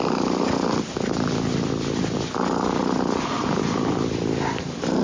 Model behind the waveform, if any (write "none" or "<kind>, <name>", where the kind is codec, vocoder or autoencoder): none